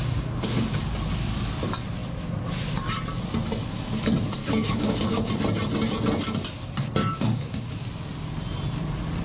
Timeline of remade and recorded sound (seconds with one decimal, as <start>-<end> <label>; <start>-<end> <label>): 0.0-0.9 remade; 0.9-4.4 recorded; 4.4-5.3 remade; 5.3-7.0 recorded; 7.0-7.7 remade; 7.7-9.2 recorded